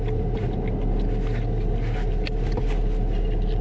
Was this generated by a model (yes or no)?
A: no